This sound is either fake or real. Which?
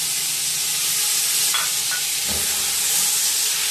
real